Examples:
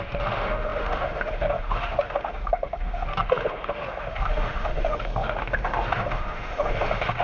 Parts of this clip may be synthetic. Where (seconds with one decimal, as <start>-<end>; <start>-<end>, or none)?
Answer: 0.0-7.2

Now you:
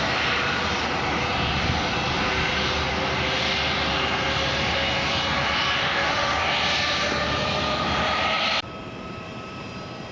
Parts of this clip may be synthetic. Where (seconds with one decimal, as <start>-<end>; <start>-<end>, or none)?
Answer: 5.8-6.4

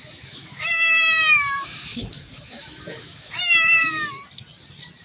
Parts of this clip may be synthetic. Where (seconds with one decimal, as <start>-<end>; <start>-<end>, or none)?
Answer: 0.0-3.8